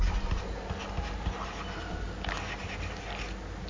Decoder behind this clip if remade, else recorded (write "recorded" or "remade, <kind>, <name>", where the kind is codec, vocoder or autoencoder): recorded